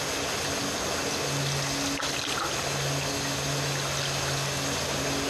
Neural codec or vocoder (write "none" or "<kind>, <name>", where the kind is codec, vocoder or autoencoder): none